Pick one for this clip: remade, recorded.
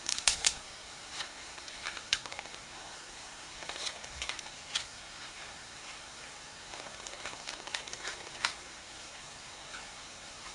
remade